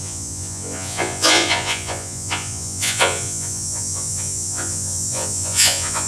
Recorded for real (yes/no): no